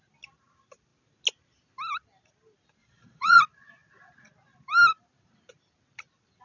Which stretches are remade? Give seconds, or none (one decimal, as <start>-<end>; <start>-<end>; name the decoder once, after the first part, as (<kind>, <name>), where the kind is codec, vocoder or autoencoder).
2.8-3.4 (vocoder, Vocos)